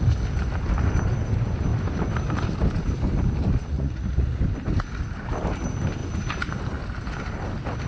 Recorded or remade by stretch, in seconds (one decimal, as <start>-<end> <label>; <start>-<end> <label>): 0.0-3.7 recorded; 3.7-4.4 remade; 4.4-7.9 recorded